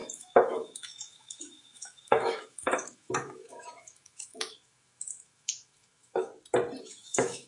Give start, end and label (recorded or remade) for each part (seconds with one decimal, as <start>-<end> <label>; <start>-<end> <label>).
0.0-6.3 remade; 6.3-6.8 recorded; 6.8-7.5 remade